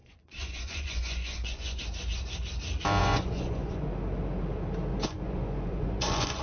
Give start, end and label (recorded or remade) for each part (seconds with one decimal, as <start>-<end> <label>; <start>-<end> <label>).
0.0-1.8 remade; 1.8-3.0 recorded; 3.0-3.9 remade; 3.9-4.9 recorded; 4.9-6.4 remade